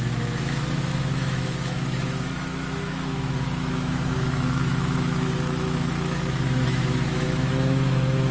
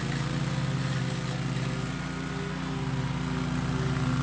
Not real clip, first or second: first